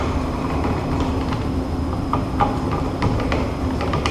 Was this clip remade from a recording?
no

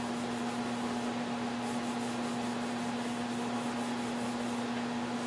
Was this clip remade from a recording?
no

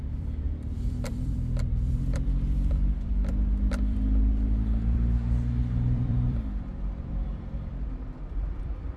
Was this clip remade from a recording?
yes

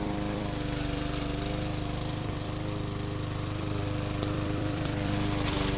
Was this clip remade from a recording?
yes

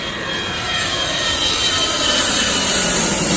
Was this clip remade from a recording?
yes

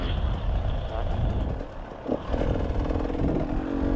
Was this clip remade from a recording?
no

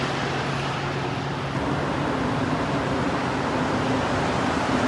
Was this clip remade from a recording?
no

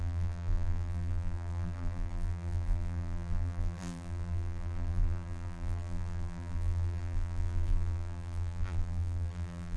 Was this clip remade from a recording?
yes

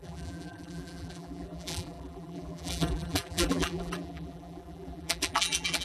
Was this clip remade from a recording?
yes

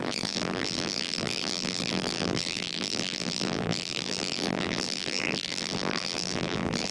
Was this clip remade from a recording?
yes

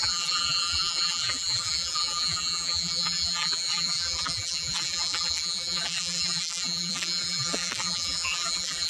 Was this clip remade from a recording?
yes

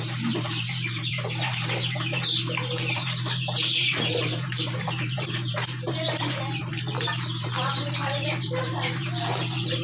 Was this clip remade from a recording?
yes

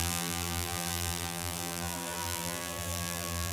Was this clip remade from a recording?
yes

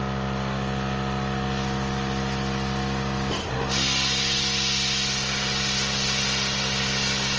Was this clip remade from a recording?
no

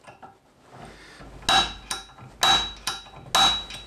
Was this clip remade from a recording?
no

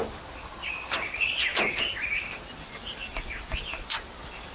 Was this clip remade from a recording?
no